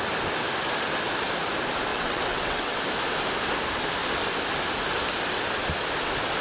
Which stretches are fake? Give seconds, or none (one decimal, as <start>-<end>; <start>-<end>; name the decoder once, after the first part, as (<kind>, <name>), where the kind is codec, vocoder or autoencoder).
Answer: 1.9-2.8 (vocoder, WaveNeXt)